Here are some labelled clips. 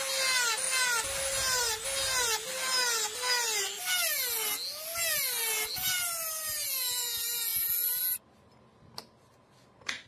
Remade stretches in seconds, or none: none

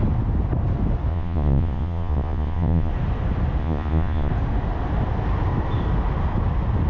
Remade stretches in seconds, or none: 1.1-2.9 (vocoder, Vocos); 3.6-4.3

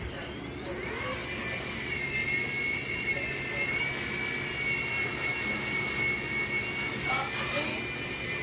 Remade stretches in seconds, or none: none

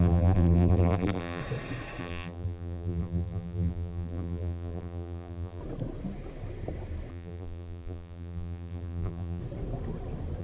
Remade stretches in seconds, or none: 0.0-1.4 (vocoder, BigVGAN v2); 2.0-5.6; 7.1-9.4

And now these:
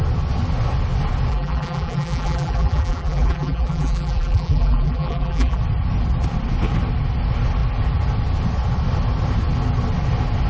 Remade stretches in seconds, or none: 1.3-5.6 (vocoder, BigVGAN v2)

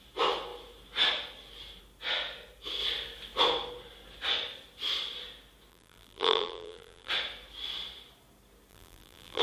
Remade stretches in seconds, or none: 5.7-7.1 (vocoder, BigVGAN v2); 8.7-9.4

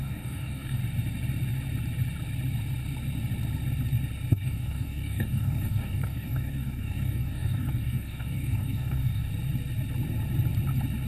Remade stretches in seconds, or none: 0.0-0.8 (codec, DAC); 4.3-9.3

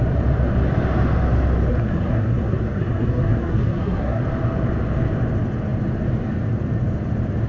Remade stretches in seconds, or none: 1.7-4.2 (codec, SNAC)